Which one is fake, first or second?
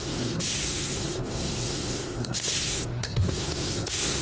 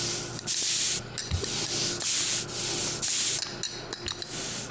first